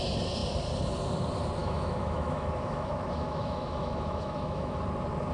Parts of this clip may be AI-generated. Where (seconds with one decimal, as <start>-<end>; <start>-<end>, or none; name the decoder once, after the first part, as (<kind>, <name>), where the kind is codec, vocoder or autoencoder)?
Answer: 1.6-4.8 (autoencoder, DAC-VAE)